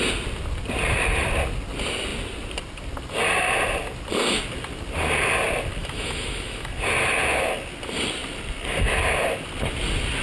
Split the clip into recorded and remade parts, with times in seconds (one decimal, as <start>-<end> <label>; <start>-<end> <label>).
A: 0.0-5.8 recorded; 5.8-6.7 remade; 6.7-10.2 recorded